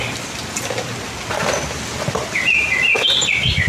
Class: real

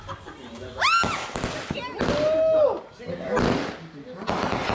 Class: real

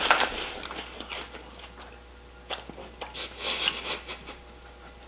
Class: real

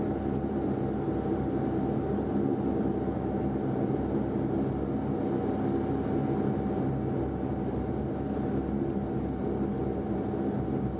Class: real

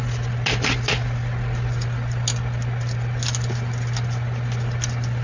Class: real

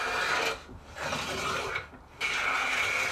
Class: real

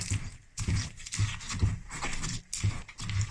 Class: real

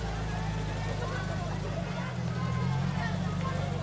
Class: real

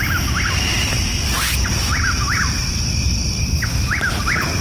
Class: real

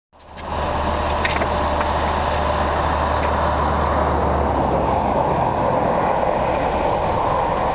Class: real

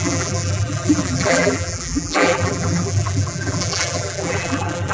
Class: fake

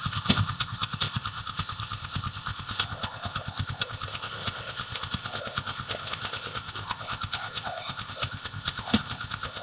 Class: fake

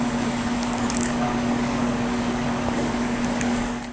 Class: fake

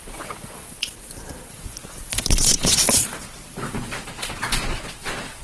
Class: fake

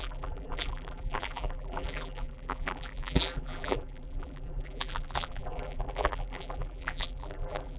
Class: fake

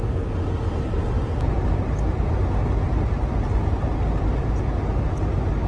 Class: real